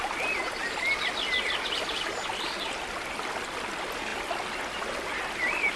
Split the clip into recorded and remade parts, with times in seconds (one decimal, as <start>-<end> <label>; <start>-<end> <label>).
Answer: 0.0-5.8 recorded